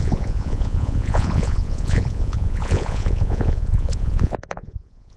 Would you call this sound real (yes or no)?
no